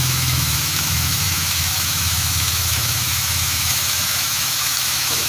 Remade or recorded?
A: remade